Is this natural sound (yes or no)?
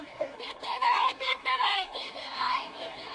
no